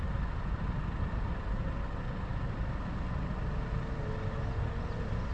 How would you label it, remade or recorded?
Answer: recorded